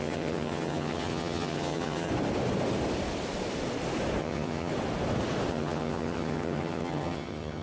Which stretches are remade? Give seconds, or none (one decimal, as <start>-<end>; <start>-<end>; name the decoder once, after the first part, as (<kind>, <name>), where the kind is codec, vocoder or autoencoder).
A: 0.0-2.1 (vocoder, HiFi-GAN); 4.2-4.7; 5.5-7.6